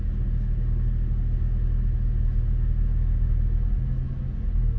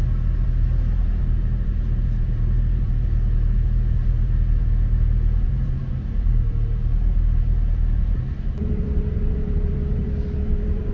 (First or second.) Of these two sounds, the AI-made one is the second